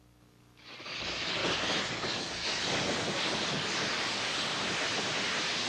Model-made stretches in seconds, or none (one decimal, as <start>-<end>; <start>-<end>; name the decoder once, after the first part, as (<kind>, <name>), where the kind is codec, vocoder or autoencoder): 0.0-1.4 (codec, DAC); 1.9-4.5